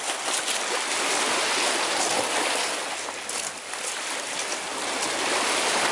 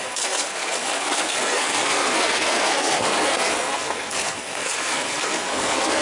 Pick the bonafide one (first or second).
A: first